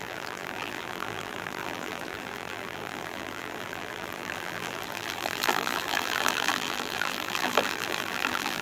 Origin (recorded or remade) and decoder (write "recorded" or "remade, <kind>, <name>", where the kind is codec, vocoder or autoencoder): remade, vocoder, BigVGAN v2